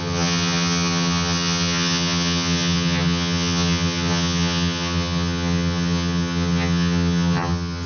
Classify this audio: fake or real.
fake